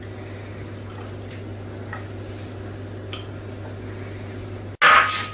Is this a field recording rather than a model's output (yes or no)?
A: yes